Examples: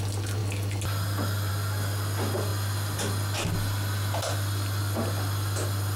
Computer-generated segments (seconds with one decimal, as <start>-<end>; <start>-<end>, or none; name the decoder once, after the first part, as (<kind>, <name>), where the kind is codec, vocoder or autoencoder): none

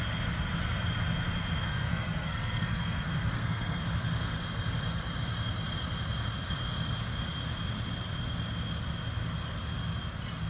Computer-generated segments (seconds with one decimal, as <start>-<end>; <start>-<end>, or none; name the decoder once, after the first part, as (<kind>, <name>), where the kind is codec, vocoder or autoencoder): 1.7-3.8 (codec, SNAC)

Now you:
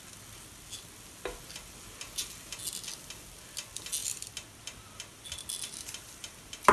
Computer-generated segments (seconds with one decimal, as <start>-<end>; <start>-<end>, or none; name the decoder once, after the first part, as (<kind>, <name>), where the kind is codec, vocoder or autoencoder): none